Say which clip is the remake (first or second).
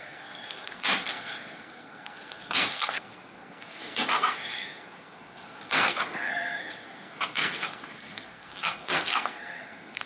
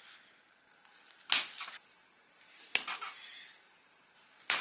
first